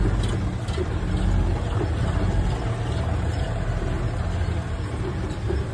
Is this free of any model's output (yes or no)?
yes